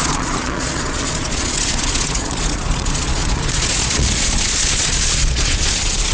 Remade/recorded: remade